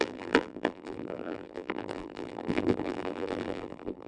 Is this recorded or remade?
remade